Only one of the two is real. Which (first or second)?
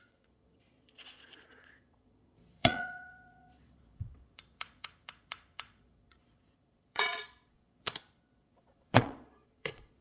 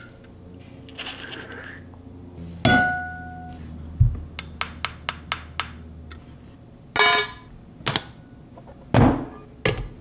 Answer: second